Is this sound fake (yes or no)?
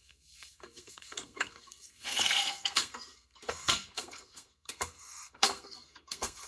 yes